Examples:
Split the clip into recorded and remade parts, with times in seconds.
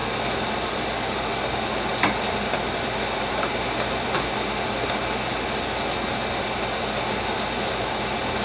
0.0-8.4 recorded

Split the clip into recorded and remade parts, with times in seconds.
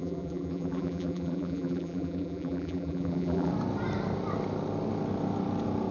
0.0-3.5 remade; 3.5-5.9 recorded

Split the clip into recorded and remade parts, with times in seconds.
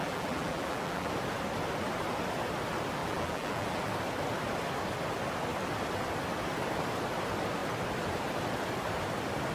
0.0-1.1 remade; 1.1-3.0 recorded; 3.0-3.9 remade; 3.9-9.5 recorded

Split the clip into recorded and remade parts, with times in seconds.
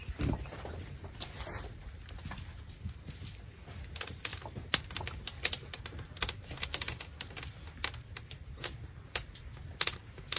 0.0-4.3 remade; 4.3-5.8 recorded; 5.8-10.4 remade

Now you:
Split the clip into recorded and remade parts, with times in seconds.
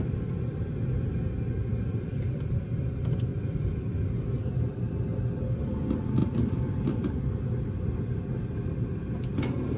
0.0-1.6 recorded; 1.6-2.8 remade; 2.8-3.3 recorded; 3.3-4.1 remade; 4.1-6.2 recorded; 6.2-7.1 remade; 7.1-9.8 recorded